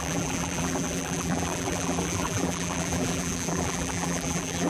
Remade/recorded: remade